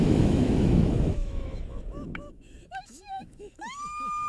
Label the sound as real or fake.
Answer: fake